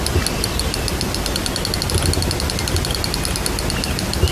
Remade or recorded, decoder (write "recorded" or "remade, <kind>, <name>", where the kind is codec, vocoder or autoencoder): recorded